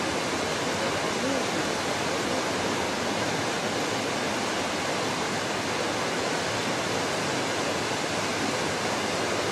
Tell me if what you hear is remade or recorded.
recorded